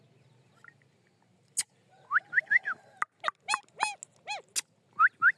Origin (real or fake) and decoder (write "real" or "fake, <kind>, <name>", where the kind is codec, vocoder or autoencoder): real